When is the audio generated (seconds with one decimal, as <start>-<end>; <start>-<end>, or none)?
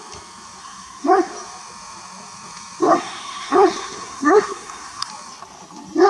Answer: 0.6-1.3; 2.8-5.1